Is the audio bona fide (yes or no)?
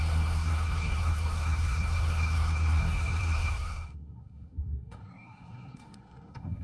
no